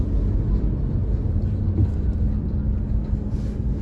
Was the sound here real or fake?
real